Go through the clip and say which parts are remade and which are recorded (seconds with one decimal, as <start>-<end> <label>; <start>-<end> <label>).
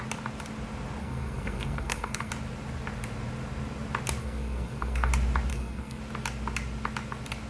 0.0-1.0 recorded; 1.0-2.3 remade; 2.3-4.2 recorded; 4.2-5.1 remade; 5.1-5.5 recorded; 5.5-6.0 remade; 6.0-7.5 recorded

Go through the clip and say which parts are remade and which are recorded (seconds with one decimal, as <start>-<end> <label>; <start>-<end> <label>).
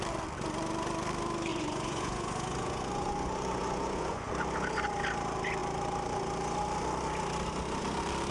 0.0-1.5 recorded; 1.5-4.3 remade; 4.3-8.3 recorded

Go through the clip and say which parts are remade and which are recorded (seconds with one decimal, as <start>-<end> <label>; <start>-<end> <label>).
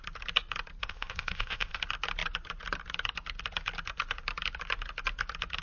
0.0-0.8 recorded; 0.8-1.8 remade; 1.8-5.6 recorded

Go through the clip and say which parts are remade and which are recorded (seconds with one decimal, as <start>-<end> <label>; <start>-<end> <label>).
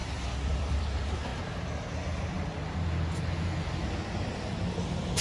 0.0-0.5 recorded; 0.5-1.3 remade; 1.3-4.4 recorded; 4.4-5.2 remade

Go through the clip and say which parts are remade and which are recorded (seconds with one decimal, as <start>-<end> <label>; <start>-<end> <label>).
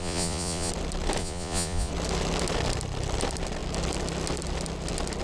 0.0-0.7 remade; 0.7-1.2 recorded; 1.2-1.9 remade; 1.9-5.2 recorded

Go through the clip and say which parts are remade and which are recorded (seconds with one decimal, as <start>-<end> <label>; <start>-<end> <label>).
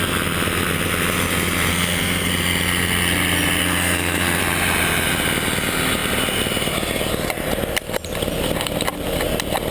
0.0-1.7 recorded; 1.7-2.3 remade; 2.3-3.6 recorded; 3.6-4.4 remade; 4.4-9.7 recorded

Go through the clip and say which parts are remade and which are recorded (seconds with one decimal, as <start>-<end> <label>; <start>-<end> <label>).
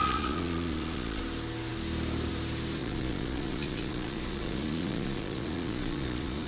0.0-1.2 remade; 1.2-2.8 recorded; 2.8-6.5 remade